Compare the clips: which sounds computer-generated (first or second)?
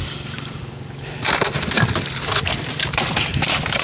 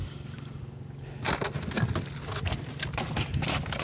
first